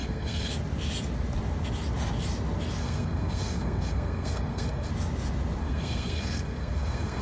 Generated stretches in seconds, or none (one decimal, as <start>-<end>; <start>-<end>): 0.0-0.5; 2.8-4.9; 5.6-7.2